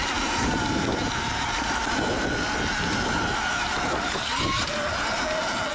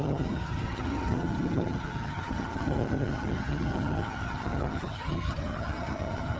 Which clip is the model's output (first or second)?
second